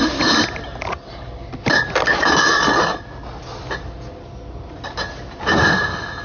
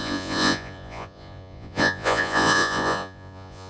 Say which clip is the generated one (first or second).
second